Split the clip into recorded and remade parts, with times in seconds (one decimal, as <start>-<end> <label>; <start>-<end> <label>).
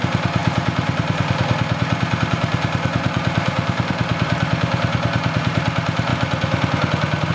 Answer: 0.0-6.1 remade; 6.1-7.3 recorded